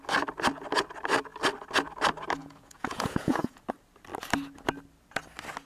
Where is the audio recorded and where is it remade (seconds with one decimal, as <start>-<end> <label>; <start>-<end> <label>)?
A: 0.0-2.4 recorded; 2.4-3.6 remade; 3.6-5.7 recorded

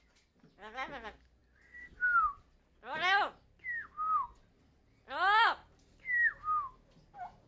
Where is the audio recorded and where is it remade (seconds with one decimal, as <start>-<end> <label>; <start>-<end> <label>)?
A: 0.0-7.5 recorded

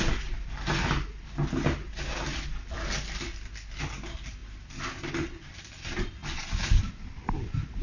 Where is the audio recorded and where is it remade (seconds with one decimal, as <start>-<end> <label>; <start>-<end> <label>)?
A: 0.0-7.8 recorded